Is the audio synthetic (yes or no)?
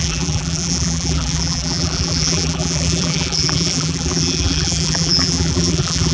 yes